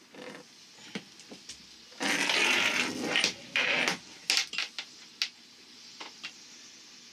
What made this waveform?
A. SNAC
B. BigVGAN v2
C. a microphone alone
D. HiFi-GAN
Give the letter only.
C